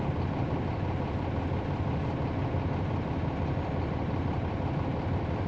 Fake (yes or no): no